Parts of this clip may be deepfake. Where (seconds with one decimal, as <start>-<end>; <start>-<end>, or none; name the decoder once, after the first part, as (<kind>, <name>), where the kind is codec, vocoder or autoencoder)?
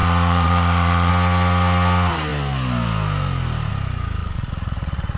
0.0-1.1 (vocoder, Vocos); 4.2-5.2